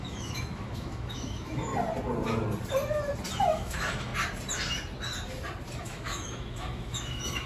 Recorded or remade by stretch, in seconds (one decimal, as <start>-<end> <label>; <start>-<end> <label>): 0.0-1.7 remade; 1.7-3.4 recorded; 3.4-4.1 remade; 4.1-5.8 recorded; 5.8-7.5 remade